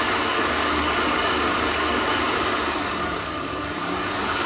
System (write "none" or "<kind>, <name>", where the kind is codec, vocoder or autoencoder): codec, DAC